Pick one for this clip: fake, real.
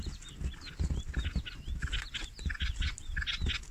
real